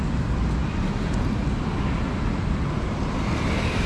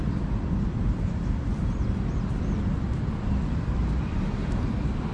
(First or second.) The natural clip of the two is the first